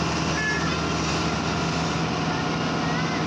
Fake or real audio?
real